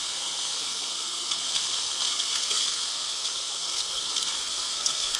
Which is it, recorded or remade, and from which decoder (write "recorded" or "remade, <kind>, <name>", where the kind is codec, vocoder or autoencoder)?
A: remade, codec, SNAC